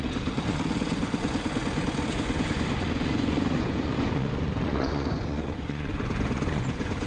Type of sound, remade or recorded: remade